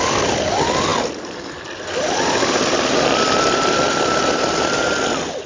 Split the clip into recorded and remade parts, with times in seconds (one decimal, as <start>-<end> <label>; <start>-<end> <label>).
0.0-5.5 recorded